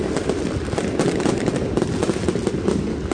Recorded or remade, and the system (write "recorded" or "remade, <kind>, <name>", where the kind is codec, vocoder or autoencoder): recorded